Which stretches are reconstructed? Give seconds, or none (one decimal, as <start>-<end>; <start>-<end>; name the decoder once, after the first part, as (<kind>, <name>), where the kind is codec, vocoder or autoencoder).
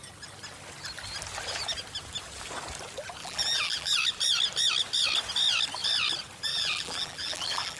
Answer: 3.2-3.9 (vocoder, BigVGAN v2); 6.5-7.8